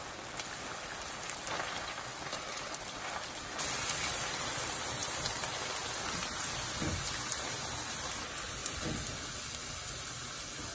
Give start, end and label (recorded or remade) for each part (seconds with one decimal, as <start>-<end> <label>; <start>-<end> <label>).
0.0-10.7 recorded